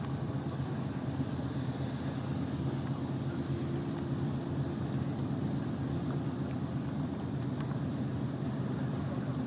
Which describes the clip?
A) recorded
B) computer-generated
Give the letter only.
A